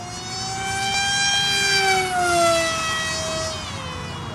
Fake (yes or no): no